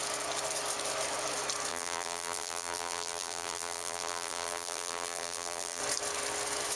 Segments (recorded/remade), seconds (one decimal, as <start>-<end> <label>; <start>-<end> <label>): 0.0-1.7 recorded; 1.7-5.8 remade; 5.8-6.8 recorded